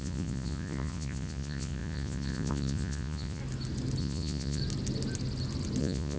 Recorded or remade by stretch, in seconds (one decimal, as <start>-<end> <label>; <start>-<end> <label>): 0.0-3.4 remade; 3.4-4.0 recorded; 4.0-4.6 remade; 4.6-5.8 recorded; 5.8-6.2 remade